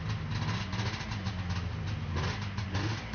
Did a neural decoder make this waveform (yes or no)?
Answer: no